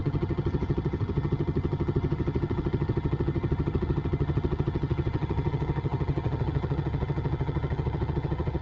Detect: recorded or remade remade